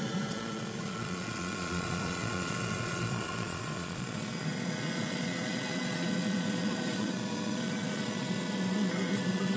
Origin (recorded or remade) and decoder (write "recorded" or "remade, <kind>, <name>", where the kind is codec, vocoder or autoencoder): remade, vocoder, Vocos